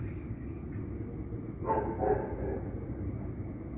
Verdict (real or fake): real